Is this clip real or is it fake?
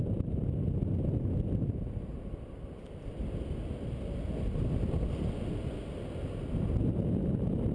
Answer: real